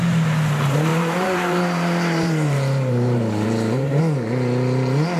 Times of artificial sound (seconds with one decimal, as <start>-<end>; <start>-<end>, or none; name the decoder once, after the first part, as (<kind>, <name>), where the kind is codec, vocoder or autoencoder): 0.9-4.0 (vocoder, BigVGAN v2)